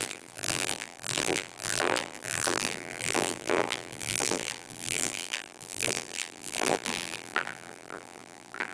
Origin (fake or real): fake